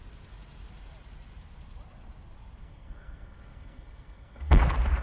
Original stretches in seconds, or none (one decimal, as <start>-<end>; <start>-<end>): 0.0-2.6; 4.6-5.0